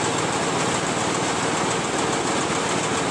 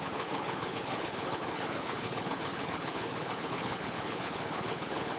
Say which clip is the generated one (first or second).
second